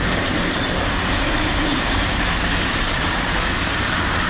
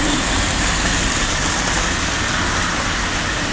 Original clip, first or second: second